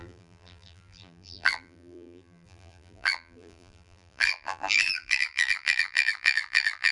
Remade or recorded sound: remade